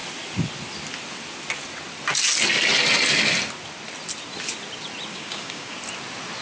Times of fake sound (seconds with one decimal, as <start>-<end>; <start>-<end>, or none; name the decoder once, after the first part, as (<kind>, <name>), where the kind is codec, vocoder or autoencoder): 5.1-5.8 (codec, DAC)